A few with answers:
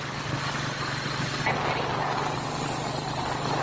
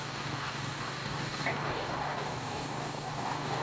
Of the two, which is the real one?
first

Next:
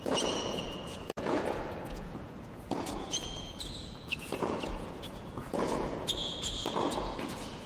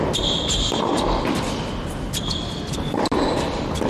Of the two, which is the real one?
second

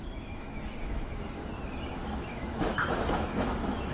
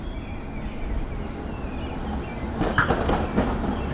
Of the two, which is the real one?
second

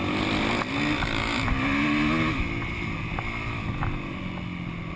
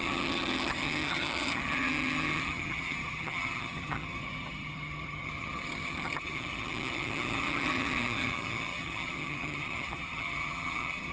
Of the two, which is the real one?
first